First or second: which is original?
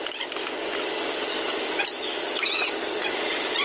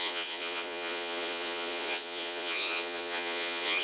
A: first